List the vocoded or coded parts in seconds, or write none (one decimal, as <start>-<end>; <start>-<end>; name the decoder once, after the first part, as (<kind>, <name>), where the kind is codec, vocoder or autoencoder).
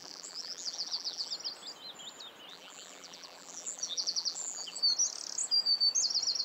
0.0-1.3 (vocoder, BigVGAN v2); 2.5-4.8